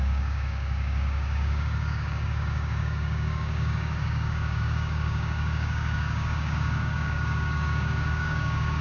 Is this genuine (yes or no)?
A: no